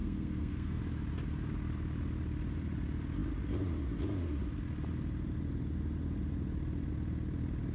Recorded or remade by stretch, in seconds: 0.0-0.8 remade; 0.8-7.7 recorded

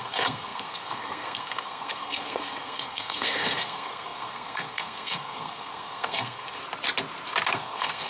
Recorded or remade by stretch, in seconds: 0.0-6.6 remade; 6.6-7.5 recorded; 7.5-8.1 remade

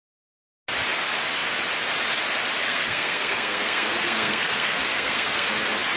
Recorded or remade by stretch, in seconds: 0.0-2.6 recorded; 2.6-5.5 remade; 5.5-6.0 recorded

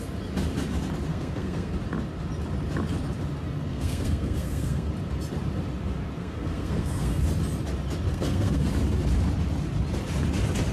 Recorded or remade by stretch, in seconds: 0.0-1.1 recorded; 1.1-1.7 remade; 1.7-3.7 recorded; 3.7-4.9 remade; 4.9-6.2 recorded; 6.2-7.2 remade; 7.2-8.1 recorded; 8.1-8.7 remade; 8.7-10.7 recorded

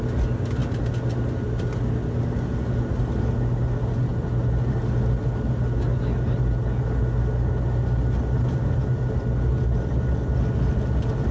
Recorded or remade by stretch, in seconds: 0.0-11.3 recorded

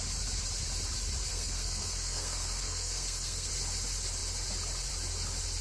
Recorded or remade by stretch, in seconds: 0.0-1.3 recorded; 1.3-3.5 remade; 3.5-5.6 recorded

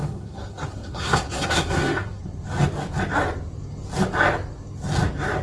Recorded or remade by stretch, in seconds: 0.0-2.2 remade; 2.2-5.4 recorded

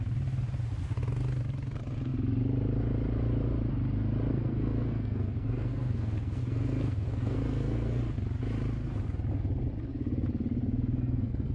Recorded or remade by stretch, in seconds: 0.0-4.3 recorded; 4.3-8.0 remade; 8.0-10.6 recorded; 10.6-11.5 remade